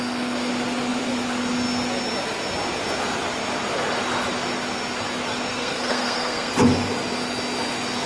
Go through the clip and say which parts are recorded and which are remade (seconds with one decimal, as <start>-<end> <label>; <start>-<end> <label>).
0.0-5.5 recorded; 5.5-6.5 remade; 6.5-8.1 recorded